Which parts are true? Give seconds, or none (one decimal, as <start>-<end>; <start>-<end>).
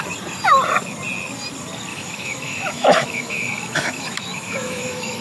0.0-1.9